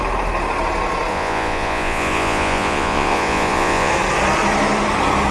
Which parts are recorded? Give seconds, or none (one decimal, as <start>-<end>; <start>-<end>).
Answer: 0.0-1.1; 3.9-5.3